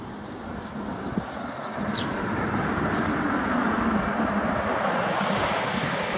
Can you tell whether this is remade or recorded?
remade